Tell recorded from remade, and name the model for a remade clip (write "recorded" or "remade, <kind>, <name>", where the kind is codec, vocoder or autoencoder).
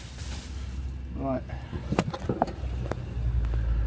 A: recorded